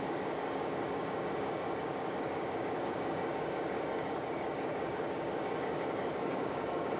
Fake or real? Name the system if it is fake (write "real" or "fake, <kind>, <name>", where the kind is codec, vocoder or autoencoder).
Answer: fake, codec, DAC